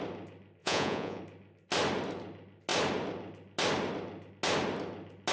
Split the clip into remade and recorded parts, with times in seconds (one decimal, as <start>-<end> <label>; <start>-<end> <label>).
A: 0.0-0.6 recorded; 0.6-1.2 remade; 1.2-5.3 recorded